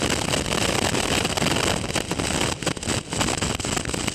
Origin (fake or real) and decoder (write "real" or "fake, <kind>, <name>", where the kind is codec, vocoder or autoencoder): real